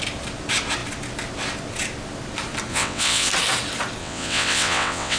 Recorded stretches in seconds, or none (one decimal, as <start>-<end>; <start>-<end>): 0.0-2.7; 3.3-4.0